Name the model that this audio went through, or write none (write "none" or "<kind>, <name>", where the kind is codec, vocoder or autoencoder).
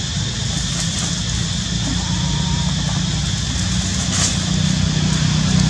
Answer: none